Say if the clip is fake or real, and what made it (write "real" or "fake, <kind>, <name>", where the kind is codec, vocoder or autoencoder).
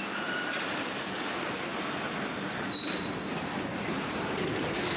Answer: real